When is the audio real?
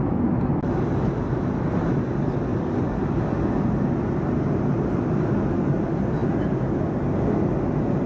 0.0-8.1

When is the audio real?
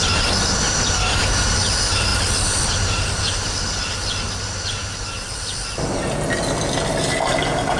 0.0-2.1; 3.1-7.8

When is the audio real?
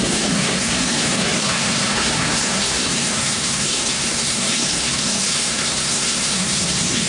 none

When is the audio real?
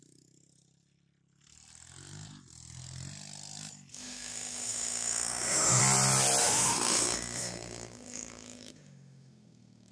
0.0-3.9; 5.8-6.4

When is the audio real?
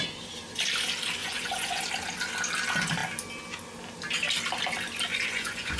0.0-1.2; 1.8-5.1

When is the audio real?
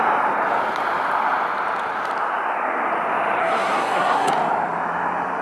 0.0-3.4; 4.3-5.4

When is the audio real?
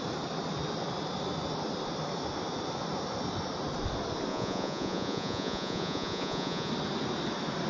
0.0-4.3; 6.7-7.7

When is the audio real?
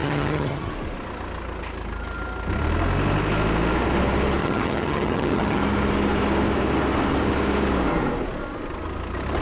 0.7-4.4; 5.6-9.4